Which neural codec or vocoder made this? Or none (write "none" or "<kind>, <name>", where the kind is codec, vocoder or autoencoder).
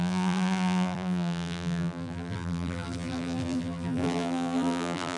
vocoder, BigVGAN v2